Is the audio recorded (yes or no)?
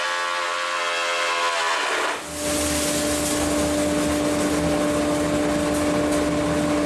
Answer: yes